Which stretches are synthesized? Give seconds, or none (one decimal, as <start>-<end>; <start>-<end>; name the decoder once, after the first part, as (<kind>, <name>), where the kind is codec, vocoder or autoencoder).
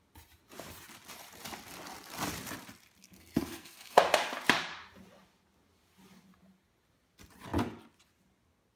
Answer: 3.0-4.0 (codec, SNAC)